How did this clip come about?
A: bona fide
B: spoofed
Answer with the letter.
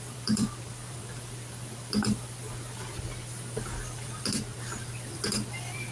B